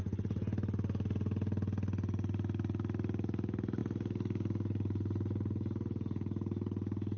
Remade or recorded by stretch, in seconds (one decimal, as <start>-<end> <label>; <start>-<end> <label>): 0.0-7.2 recorded